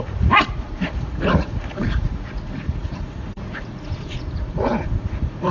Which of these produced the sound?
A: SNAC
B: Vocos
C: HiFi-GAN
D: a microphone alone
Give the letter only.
B